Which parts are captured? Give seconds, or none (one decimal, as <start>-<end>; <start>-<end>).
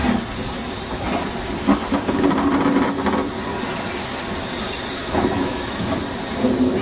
0.0-5.0; 5.9-6.8